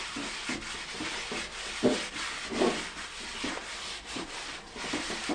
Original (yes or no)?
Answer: yes